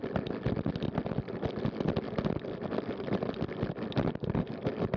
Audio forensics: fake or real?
real